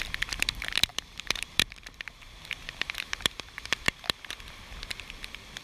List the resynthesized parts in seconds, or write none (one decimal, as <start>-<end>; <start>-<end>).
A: 0.0-5.6